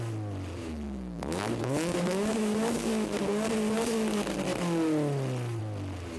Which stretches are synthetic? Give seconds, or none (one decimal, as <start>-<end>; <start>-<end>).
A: 0.6-3.2